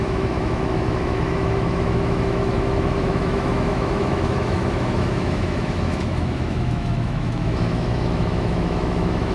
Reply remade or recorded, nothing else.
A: remade